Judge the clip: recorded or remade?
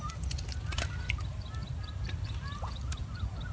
recorded